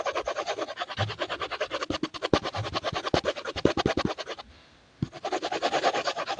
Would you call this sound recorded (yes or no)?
yes